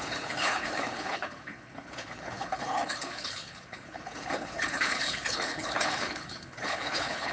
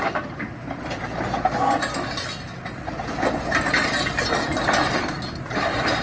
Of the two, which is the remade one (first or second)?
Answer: first